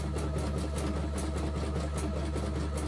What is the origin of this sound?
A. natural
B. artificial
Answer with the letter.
A